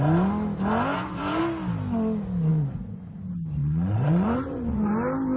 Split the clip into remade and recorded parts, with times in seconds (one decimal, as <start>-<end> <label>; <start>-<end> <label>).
0.0-0.9 recorded; 0.9-1.4 remade; 1.4-2.5 recorded; 2.5-3.1 remade; 3.1-3.6 recorded; 3.6-4.9 remade; 4.9-5.4 recorded